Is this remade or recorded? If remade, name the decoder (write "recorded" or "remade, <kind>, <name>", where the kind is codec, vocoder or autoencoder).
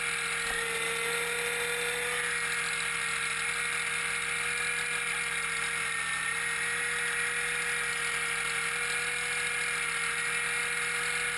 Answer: recorded